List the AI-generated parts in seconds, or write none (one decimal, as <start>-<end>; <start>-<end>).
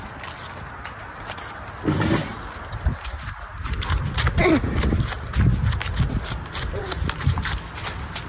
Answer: none